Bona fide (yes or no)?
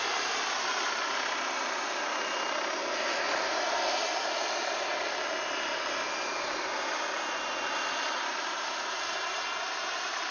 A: yes